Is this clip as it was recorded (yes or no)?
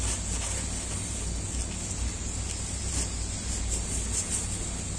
yes